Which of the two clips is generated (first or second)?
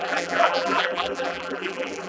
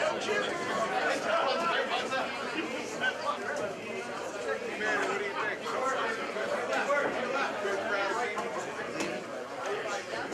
first